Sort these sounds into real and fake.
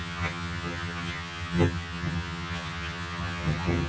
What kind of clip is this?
fake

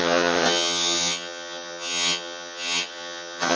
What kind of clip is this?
fake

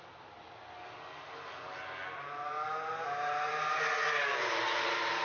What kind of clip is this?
real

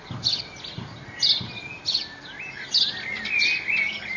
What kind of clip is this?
real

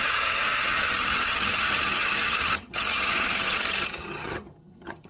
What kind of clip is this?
fake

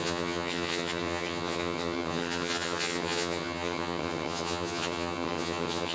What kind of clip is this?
fake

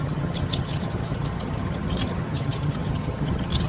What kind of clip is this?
fake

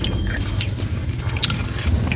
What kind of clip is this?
real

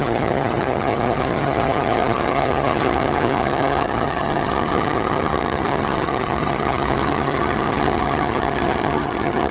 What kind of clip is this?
fake